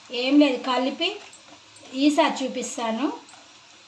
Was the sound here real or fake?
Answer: real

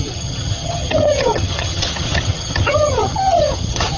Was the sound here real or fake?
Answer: fake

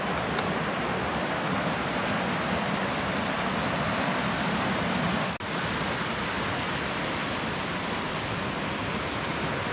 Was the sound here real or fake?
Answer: real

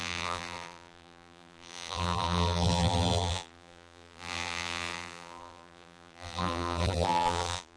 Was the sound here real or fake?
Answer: fake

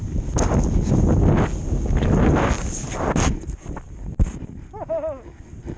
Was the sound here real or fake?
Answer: real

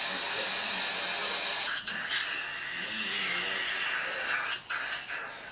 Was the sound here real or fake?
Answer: real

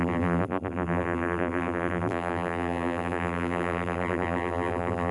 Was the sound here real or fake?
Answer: fake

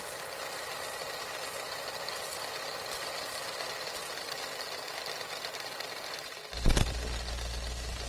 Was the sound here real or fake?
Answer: real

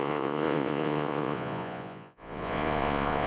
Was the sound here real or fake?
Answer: fake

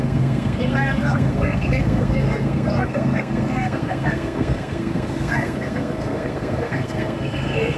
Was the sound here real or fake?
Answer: fake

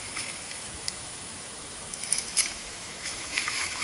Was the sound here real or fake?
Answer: fake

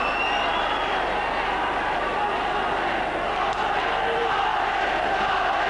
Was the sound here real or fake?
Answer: real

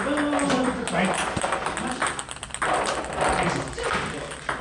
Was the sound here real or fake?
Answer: real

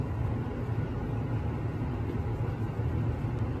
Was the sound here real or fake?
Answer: real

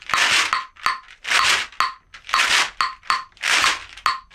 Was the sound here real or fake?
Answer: real